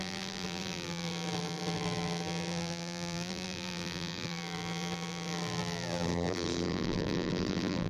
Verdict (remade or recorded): remade